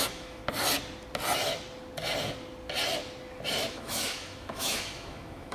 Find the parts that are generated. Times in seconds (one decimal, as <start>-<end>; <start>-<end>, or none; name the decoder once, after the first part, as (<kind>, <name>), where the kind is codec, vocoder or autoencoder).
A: 0.0-0.4 (autoencoder, DAC-VAE); 3.7-5.5